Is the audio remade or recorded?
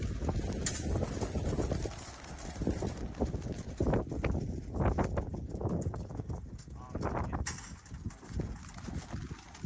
recorded